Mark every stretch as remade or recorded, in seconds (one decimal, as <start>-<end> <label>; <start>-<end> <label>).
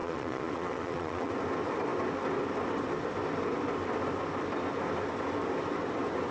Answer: 0.0-1.3 remade; 1.3-6.3 recorded